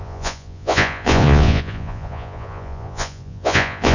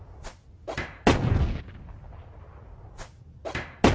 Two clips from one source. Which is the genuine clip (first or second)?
second